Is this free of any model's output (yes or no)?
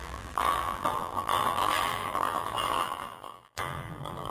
no